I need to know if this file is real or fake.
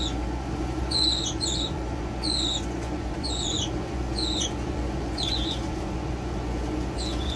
fake